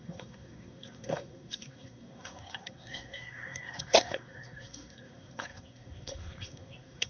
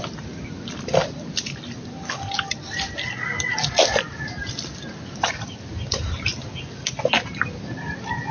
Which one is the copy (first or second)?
first